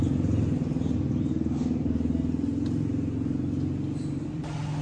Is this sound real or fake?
real